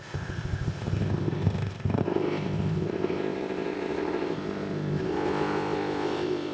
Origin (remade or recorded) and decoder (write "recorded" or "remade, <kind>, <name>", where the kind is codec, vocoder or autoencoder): remade, codec, ZipCodec